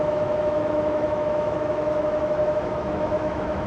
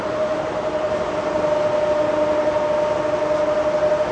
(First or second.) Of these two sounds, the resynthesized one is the first